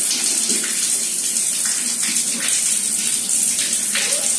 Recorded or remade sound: recorded